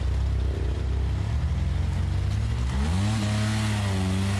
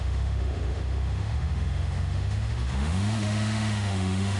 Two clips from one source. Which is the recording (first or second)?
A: first